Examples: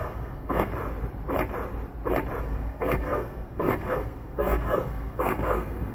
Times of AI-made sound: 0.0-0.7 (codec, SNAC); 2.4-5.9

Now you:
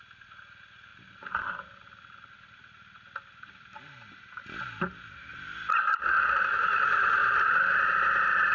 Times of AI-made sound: none

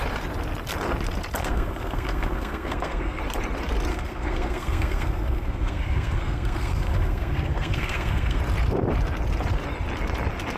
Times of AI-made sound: 1.4-3.2 (codec, SNAC); 3.9-8.4